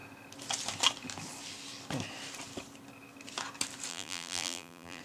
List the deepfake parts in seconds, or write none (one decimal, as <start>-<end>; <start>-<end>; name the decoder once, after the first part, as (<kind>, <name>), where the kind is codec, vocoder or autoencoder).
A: 3.9-5.0 (vocoder, BigVGAN v2)